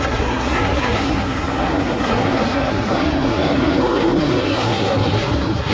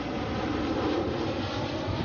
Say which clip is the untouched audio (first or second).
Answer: second